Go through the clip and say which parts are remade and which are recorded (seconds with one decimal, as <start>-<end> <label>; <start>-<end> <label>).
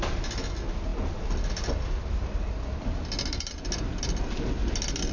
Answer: 0.0-5.1 recorded